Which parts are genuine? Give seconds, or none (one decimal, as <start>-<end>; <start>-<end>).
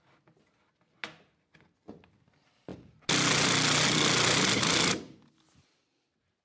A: 0.0-6.4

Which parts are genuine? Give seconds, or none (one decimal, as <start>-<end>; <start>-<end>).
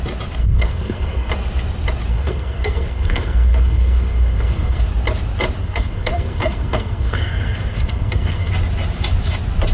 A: 0.0-0.4; 1.3-2.1; 4.8-5.6; 8.5-9.7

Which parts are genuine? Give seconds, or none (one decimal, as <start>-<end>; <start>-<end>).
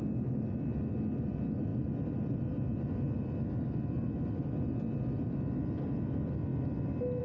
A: 0.0-7.2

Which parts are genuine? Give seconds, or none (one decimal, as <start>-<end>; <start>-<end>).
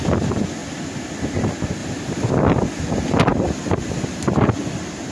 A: 0.0-1.8; 2.3-3.3; 4.6-5.1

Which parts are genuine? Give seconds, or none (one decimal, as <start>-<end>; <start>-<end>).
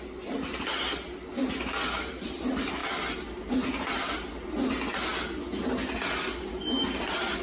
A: 0.0-7.4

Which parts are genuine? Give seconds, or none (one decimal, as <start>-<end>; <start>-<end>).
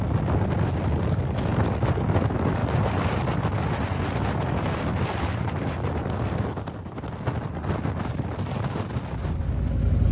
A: 0.0-10.1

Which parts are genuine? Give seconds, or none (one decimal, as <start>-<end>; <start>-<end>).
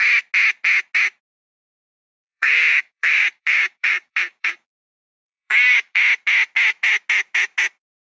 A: 0.0-1.9; 6.0-8.1